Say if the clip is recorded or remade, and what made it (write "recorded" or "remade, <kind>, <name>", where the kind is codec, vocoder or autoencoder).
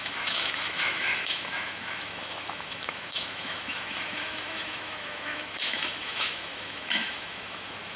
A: remade, autoencoder, DAC-VAE